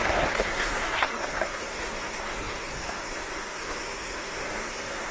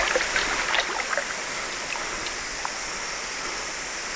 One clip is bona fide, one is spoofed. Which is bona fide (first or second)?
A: second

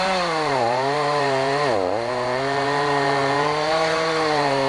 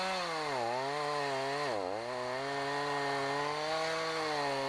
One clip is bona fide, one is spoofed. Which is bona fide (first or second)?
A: second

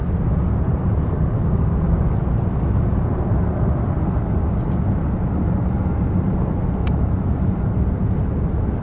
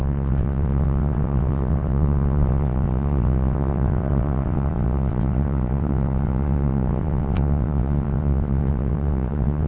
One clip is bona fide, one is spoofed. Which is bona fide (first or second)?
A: first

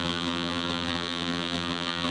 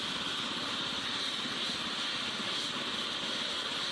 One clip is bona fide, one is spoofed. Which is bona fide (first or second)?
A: second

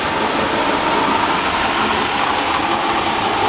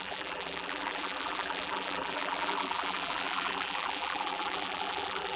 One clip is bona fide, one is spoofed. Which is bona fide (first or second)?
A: first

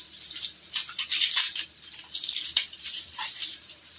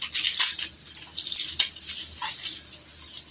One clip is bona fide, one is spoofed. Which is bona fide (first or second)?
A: second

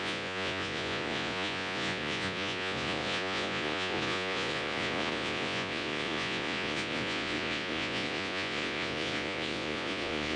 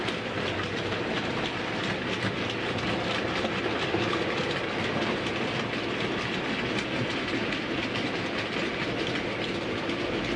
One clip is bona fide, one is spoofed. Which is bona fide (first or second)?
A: second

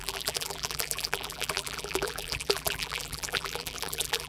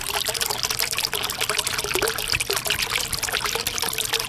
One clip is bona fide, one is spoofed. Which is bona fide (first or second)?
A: second